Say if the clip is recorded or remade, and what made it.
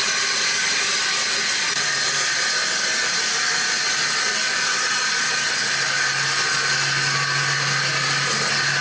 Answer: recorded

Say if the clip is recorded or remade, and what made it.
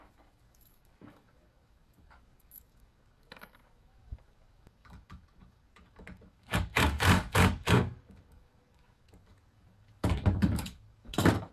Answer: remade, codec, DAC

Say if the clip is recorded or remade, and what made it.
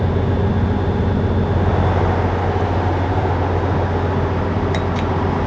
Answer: recorded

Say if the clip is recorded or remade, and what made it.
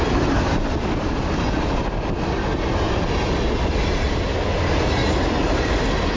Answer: recorded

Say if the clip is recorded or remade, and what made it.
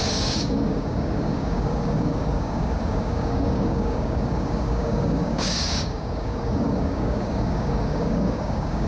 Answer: remade, codec, DAC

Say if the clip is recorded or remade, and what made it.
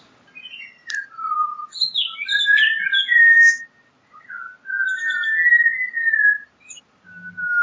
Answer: recorded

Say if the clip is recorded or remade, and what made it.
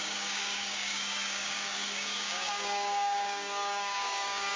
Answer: remade, codec, DAC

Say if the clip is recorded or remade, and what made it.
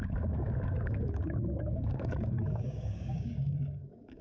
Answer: remade, codec, DAC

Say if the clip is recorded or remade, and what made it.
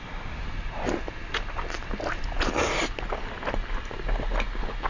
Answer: recorded